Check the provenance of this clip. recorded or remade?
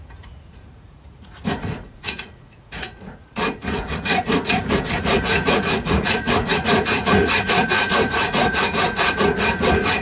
remade